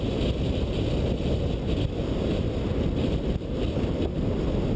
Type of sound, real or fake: real